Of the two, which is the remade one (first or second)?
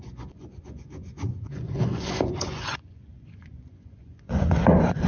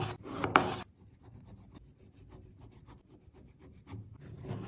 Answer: first